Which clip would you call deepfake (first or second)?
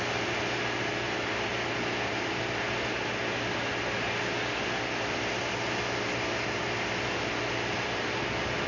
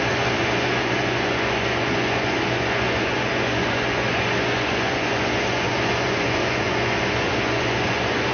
second